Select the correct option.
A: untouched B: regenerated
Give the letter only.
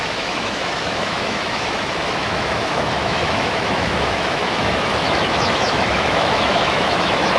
B